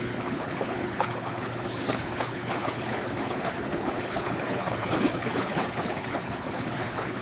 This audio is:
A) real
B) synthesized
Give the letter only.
B